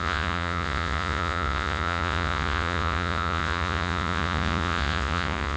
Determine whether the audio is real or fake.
fake